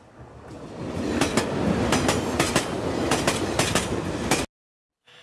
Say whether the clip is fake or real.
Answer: real